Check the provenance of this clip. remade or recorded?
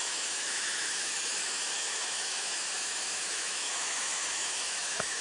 remade